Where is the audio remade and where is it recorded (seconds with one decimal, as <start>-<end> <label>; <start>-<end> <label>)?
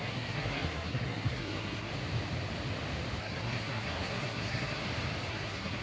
0.0-1.9 remade; 1.9-3.2 recorded; 3.2-4.8 remade; 4.8-5.3 recorded; 5.3-5.8 remade